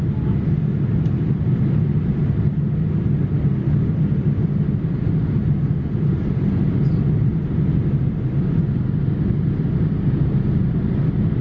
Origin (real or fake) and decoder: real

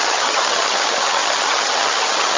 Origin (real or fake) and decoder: fake, vocoder, HiFi-GAN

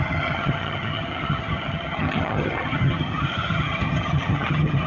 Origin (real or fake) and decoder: fake, vocoder, HiFi-GAN